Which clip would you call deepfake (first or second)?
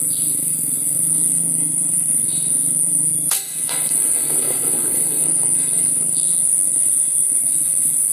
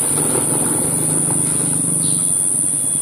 first